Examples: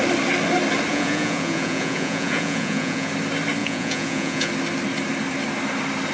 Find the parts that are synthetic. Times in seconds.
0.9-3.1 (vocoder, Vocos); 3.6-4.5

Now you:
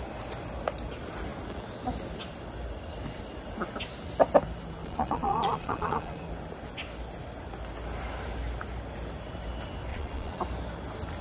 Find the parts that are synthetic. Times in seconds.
4.8-6.2 (vocoder, Vocos); 9.9-10.4

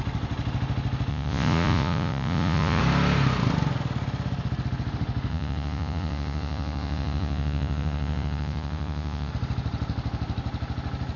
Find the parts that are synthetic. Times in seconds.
1.1-2.8 (vocoder, Vocos); 5.3-9.3